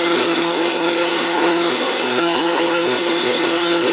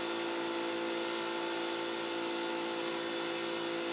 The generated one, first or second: first